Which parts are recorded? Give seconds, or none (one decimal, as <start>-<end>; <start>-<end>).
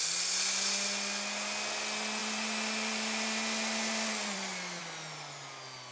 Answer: 0.0-2.2; 4.8-5.9